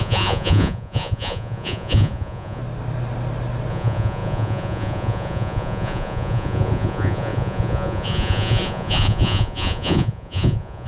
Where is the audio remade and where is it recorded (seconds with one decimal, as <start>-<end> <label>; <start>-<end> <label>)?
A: 0.0-2.6 remade; 2.6-3.7 recorded; 3.7-10.9 remade